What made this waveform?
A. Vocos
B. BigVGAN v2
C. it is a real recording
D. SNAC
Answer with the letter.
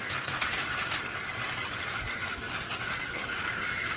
C